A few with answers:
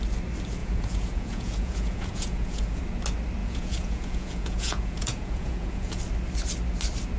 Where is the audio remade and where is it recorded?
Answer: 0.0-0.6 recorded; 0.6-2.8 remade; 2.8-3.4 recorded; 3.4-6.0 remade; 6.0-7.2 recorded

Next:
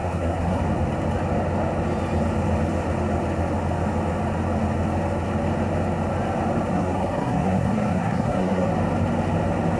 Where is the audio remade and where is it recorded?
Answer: 0.0-0.6 remade; 0.6-6.7 recorded; 6.7-8.7 remade; 8.7-9.8 recorded

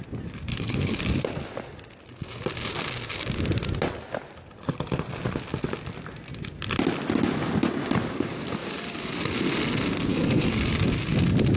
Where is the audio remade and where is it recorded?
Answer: 0.0-0.5 recorded; 0.5-1.0 remade; 1.0-10.1 recorded; 10.1-10.8 remade; 10.8-11.6 recorded

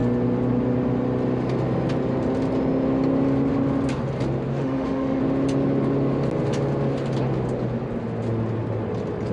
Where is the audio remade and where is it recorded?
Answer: 0.0-4.5 recorded; 4.5-5.2 remade; 5.2-9.3 recorded

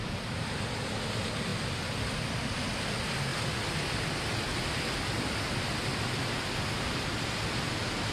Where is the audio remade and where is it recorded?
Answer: 0.0-8.1 recorded

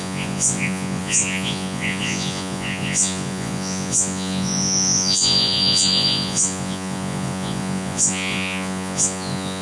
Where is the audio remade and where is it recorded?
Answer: 0.0-9.6 remade